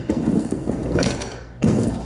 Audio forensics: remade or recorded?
remade